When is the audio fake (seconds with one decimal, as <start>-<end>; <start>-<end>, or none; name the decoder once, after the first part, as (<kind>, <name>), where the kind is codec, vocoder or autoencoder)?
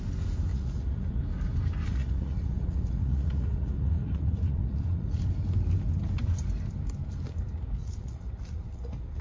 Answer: 0.5-1.2 (vocoder, Vocos); 1.9-5.2; 7.8-9.2